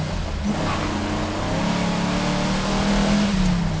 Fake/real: real